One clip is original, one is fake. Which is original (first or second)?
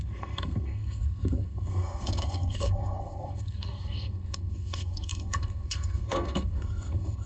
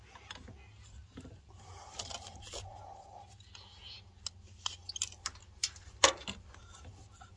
second